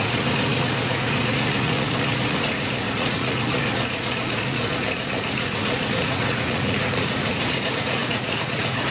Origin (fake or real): fake